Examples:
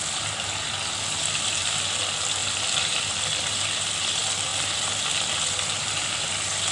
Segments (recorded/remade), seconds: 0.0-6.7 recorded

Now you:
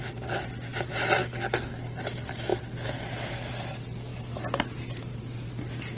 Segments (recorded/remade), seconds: 0.0-1.2 recorded; 1.2-2.0 remade; 2.0-6.0 recorded

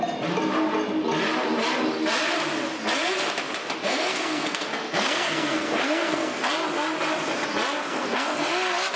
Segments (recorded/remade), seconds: 0.0-3.8 recorded; 3.8-6.5 remade; 6.5-7.8 recorded; 7.8-8.5 remade; 8.5-9.0 recorded

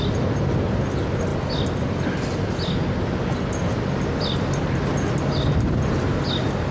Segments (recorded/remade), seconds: 0.0-6.7 recorded

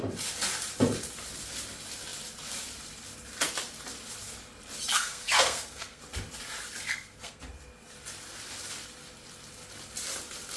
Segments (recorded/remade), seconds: 0.0-4.9 recorded; 4.9-6.0 remade; 6.0-6.9 recorded; 6.9-7.4 remade; 7.4-10.6 recorded

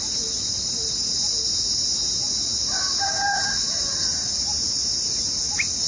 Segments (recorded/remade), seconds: 0.0-5.9 recorded

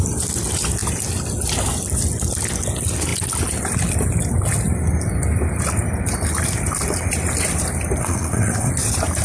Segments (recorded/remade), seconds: 0.0-8.0 recorded; 8.0-8.7 remade; 8.7-9.2 recorded

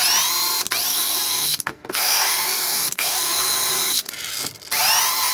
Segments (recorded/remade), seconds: 0.0-0.9 recorded; 0.9-4.1 remade; 4.1-5.3 recorded